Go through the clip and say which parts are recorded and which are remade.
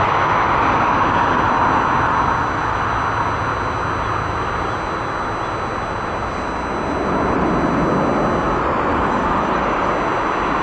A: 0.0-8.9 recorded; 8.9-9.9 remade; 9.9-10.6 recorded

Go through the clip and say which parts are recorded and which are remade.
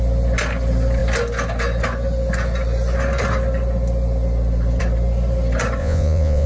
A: 0.0-5.8 recorded; 5.8-6.5 remade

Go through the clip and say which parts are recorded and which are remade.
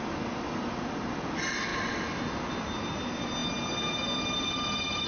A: 0.0-5.1 recorded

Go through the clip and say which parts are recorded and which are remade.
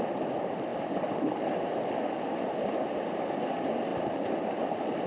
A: 0.0-3.9 recorded; 3.9-5.1 remade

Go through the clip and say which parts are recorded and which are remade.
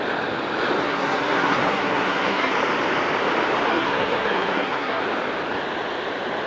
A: 0.0-0.8 recorded; 0.8-2.5 remade; 2.5-3.7 recorded; 3.7-5.0 remade; 5.0-6.5 recorded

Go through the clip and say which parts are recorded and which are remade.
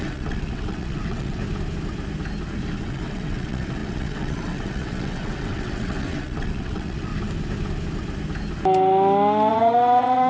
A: 0.0-1.4 remade; 1.4-2.8 recorded; 2.8-7.1 remade; 7.1-9.5 recorded; 9.5-10.3 remade